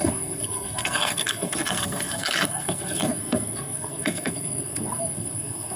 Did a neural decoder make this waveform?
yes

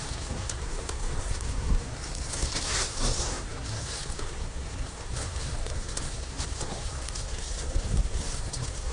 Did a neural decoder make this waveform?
yes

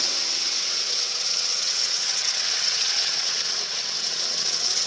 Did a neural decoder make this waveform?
yes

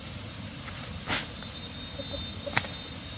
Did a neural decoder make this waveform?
no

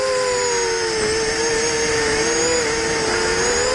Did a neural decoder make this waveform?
no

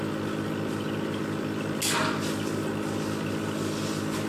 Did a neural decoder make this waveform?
no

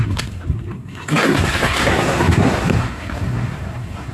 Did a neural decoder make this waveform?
yes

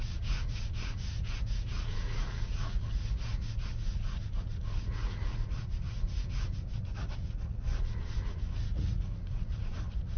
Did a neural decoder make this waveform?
yes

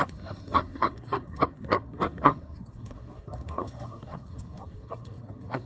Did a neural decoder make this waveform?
yes